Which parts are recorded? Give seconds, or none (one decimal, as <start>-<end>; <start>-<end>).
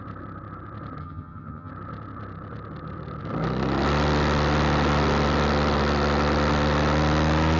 0.0-1.0; 1.7-7.6